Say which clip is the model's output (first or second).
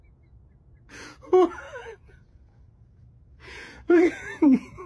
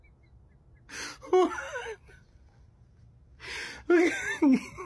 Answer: first